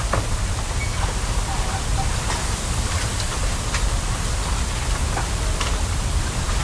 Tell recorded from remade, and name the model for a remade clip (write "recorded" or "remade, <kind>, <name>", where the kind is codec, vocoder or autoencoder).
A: recorded